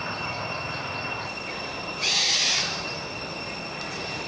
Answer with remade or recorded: recorded